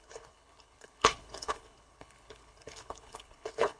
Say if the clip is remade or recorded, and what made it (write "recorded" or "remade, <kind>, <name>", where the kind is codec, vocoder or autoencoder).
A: remade, codec, HILCodec